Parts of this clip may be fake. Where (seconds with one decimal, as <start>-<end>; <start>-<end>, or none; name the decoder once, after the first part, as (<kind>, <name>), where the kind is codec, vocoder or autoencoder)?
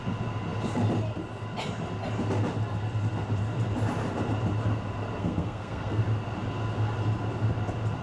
5.2-6.0 (codec, SNAC)